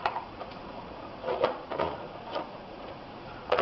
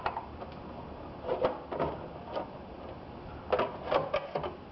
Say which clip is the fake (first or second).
first